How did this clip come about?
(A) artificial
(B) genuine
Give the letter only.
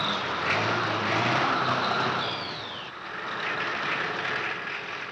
B